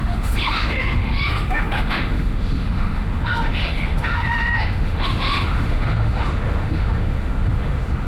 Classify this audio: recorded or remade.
remade